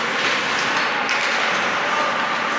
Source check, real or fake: real